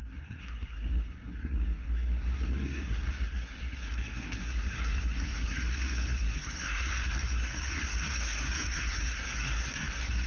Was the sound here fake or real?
fake